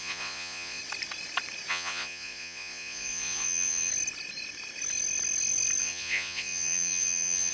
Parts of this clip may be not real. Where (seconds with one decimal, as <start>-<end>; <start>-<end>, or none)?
0.0-0.8; 1.7-3.9; 5.8-7.5